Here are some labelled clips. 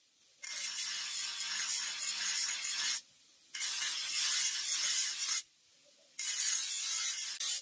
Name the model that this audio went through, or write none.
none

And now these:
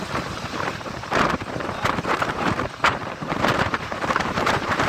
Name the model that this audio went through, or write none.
vocoder, BigVGAN v2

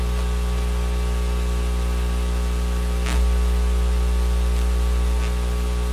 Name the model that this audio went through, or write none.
none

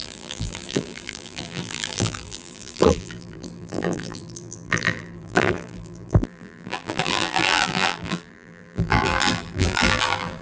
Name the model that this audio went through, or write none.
vocoder, BigVGAN v2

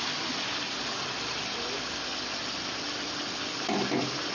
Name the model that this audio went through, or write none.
none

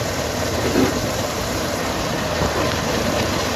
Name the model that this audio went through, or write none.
vocoder, BigVGAN v2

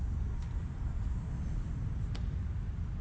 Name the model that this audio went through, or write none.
none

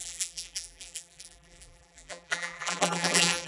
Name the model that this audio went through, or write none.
vocoder, BigVGAN v2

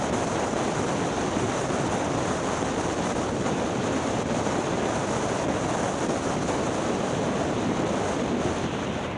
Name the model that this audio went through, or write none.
none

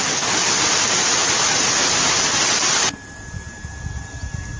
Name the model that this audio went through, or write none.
none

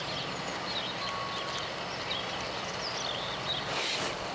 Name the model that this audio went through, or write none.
none